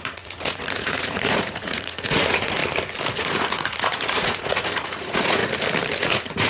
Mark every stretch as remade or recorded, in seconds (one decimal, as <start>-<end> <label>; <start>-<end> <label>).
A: 0.0-2.6 remade; 2.6-3.1 recorded; 3.1-5.4 remade; 5.4-6.0 recorded; 6.0-6.5 remade